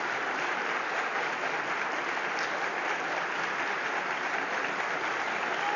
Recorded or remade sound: recorded